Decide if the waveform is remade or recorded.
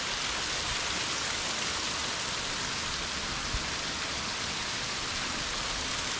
recorded